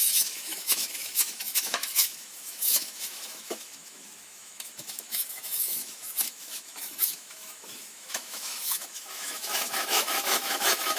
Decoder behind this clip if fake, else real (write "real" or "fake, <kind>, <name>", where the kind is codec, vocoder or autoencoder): fake, autoencoder, DAC-VAE